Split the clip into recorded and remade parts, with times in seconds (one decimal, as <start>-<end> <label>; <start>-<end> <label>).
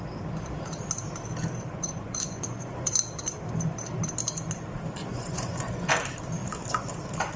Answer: 0.0-1.7 recorded; 1.7-2.9 remade; 2.9-5.0 recorded; 5.0-5.9 remade; 5.9-7.4 recorded